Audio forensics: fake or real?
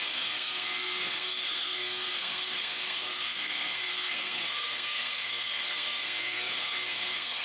fake